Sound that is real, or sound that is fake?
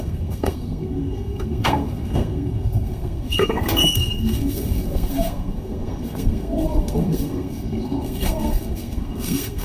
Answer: fake